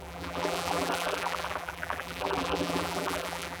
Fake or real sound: fake